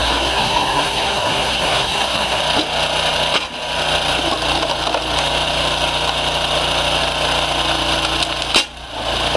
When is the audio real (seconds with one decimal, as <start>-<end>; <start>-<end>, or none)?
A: 2.4-9.4